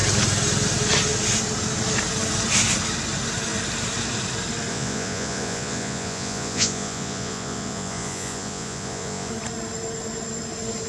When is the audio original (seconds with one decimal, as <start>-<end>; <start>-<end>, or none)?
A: 0.0-4.7; 9.3-10.9